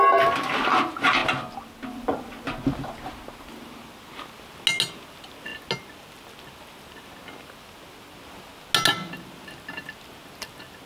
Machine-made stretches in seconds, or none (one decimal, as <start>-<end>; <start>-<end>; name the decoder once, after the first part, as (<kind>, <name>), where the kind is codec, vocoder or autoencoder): none